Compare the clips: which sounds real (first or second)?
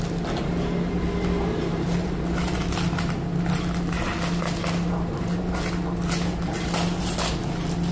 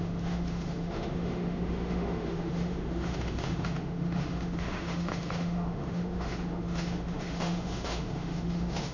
first